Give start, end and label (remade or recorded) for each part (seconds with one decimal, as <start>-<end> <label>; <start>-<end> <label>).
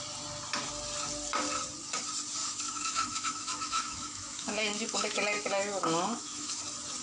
0.0-2.4 recorded; 2.4-6.6 remade; 6.6-7.0 recorded